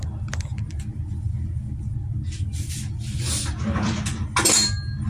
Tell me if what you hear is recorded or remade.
recorded